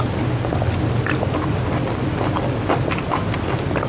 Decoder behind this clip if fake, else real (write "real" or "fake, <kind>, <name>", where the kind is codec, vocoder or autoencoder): real